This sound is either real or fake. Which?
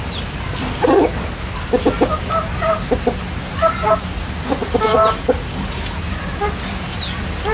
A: real